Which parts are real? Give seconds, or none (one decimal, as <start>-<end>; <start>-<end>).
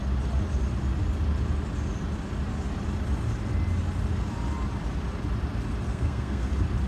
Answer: 0.0-5.9; 6.5-6.9